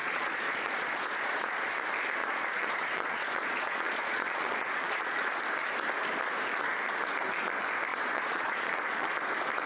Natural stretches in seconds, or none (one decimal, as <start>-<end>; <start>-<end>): 1.7-2.2; 5.4-7.9; 9.1-9.7